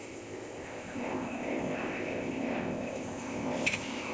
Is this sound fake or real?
fake